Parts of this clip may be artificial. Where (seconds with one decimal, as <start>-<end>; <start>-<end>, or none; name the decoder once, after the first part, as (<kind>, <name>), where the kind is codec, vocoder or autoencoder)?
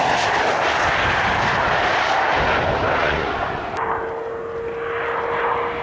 3.0-3.7 (vocoder, Vocos)